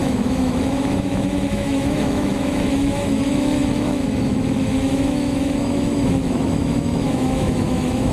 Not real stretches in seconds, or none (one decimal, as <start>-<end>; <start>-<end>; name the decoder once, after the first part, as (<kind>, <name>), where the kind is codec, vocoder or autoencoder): 0.0-8.1 (autoencoder, DAC-VAE)